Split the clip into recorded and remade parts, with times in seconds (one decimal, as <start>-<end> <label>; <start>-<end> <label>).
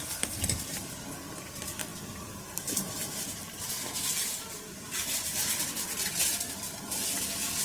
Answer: 0.0-7.6 recorded